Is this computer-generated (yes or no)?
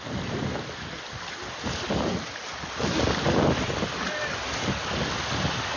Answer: no